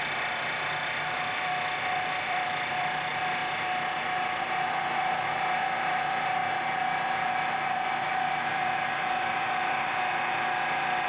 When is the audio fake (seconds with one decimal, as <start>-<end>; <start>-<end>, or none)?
0.0-3.4; 5.9-6.4